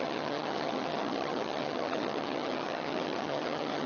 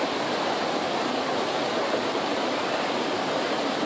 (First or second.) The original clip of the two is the second